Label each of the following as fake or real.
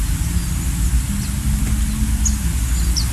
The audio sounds real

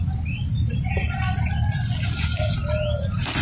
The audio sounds real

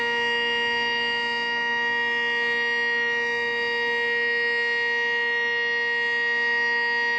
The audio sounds real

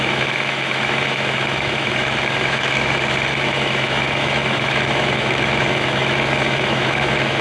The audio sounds fake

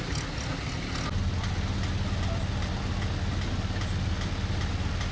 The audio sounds real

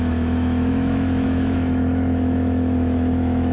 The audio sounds fake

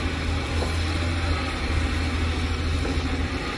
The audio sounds real